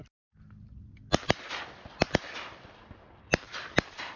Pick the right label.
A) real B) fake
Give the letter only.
A